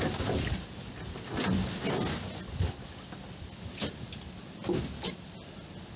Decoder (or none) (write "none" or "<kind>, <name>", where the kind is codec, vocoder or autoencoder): none